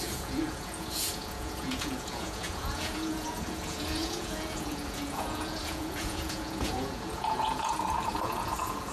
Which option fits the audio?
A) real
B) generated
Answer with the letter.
B